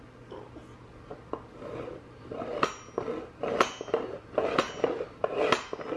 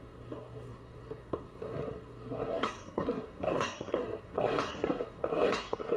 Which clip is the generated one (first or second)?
second